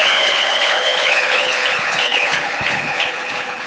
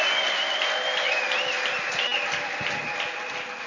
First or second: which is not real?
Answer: first